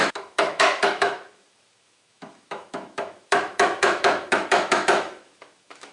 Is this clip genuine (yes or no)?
no